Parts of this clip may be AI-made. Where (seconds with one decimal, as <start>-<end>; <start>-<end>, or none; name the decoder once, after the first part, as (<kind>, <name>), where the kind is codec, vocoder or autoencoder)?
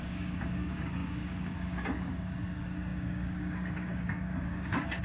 0.0-5.0 (codec, DAC)